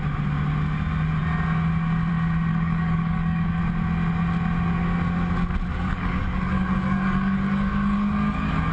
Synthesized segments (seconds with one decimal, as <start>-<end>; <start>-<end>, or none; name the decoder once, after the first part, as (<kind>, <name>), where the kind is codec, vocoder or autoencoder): 2.5-3.6 (codec, DAC); 5.7-8.7